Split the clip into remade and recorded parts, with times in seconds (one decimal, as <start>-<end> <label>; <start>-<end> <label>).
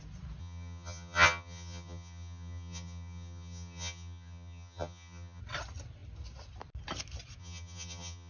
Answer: 0.0-0.4 recorded; 0.4-5.4 remade; 5.4-7.4 recorded; 7.4-8.3 remade